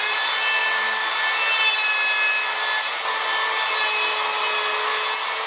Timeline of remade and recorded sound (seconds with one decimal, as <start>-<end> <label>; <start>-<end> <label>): 0.0-5.5 recorded

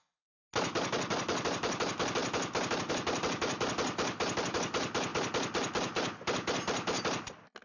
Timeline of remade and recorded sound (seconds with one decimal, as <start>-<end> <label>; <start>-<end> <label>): 0.0-7.6 recorded

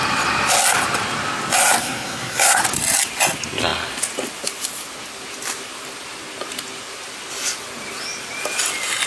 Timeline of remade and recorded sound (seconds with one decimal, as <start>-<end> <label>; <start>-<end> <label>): 0.0-1.8 recorded; 1.8-2.6 remade; 2.6-9.1 recorded

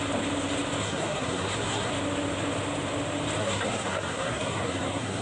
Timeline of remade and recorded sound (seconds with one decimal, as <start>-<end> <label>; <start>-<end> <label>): 0.0-0.8 recorded; 0.8-1.9 remade; 1.9-3.4 recorded; 3.4-5.2 remade

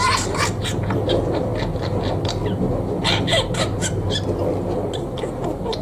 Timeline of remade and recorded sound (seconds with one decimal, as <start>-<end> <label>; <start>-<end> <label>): 0.0-5.8 recorded

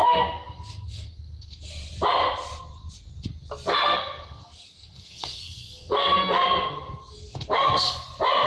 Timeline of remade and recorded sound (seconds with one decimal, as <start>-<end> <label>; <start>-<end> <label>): 0.0-1.7 remade; 1.7-3.7 recorded; 3.7-7.9 remade; 7.9-8.5 recorded

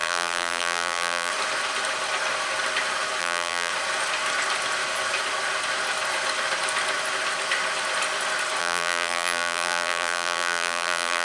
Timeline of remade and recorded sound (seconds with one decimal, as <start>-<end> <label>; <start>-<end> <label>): 0.0-1.3 remade; 1.3-3.2 recorded; 3.2-3.7 remade; 3.7-8.6 recorded; 8.6-11.2 remade